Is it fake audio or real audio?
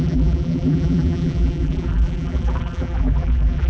fake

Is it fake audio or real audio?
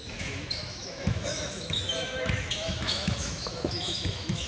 fake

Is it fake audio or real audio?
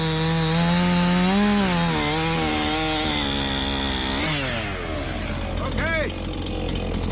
real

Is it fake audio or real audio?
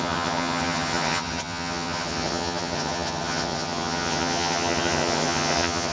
fake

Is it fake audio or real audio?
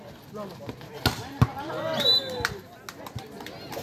real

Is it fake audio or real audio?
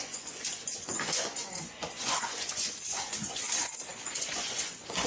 fake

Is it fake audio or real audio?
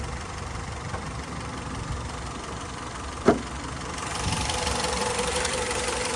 fake